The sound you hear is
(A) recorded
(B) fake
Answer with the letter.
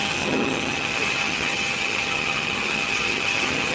B